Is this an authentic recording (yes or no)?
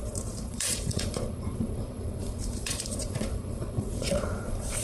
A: no